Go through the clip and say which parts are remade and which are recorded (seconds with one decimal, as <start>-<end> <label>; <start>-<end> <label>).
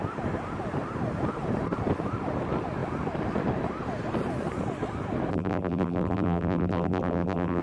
0.0-5.3 recorded; 5.3-7.6 remade